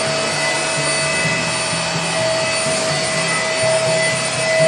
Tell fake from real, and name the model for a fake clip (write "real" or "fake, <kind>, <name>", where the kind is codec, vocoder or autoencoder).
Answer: real